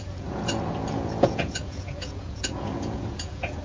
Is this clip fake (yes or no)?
yes